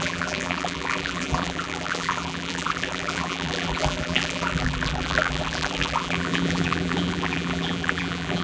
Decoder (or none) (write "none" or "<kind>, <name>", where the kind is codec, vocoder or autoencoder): vocoder, BigVGAN v2